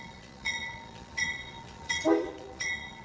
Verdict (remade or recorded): remade